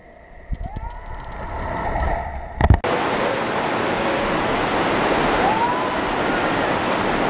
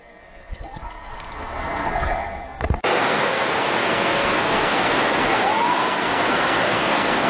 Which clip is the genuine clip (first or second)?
first